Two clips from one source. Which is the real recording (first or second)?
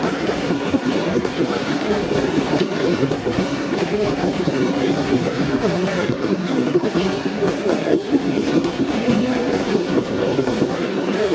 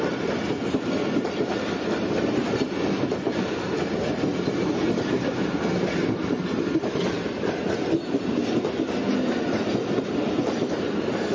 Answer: second